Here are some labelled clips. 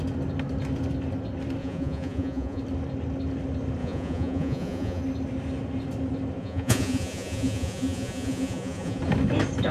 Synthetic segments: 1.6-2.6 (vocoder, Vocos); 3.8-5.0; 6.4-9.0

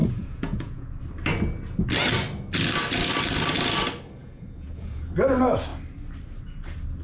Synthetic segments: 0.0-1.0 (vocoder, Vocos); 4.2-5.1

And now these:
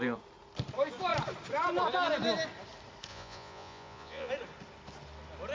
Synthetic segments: 3.1-4.3 (vocoder, Vocos)

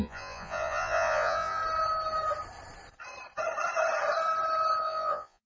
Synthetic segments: 0.0-1.6 (vocoder, Vocos); 4.8-5.5

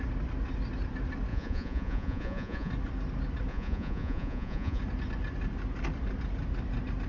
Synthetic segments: 1.3-2.7 (vocoder, Vocos); 3.5-4.8

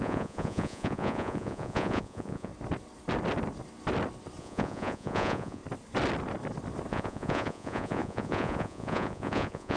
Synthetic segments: 0.0-2.5 (vocoder, Vocos); 4.4-5.6; 6.9-9.8